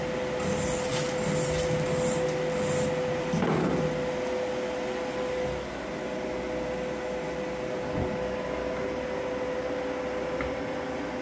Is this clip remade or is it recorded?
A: recorded